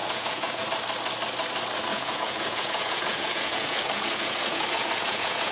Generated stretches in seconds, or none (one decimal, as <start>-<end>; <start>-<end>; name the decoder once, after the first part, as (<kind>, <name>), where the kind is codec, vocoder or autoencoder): 0.0-0.6 (vocoder, Vocos); 1.9-5.5